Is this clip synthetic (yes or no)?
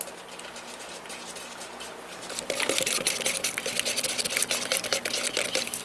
no